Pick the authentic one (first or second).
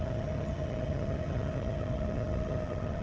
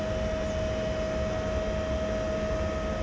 second